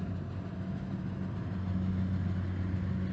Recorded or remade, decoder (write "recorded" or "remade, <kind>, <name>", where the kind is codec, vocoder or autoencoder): recorded